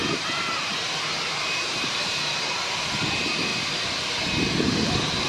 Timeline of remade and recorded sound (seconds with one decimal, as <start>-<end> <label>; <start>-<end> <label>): 0.0-2.8 remade; 2.8-5.3 recorded